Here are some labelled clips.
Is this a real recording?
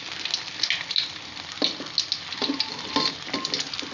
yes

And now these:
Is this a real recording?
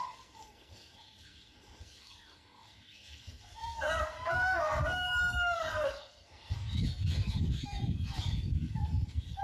no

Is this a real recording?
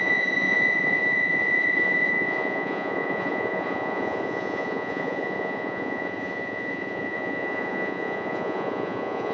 no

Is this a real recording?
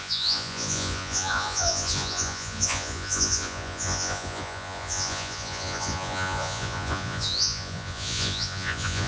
no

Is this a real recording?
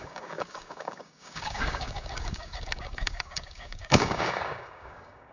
no